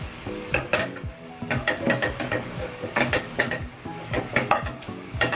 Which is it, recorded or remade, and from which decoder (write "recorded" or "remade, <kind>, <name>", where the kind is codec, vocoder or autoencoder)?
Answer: remade, codec, DAC